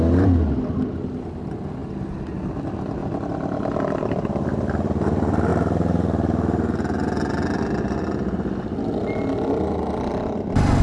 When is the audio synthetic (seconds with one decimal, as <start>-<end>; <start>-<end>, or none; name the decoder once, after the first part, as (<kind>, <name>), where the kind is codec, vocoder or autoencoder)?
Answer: none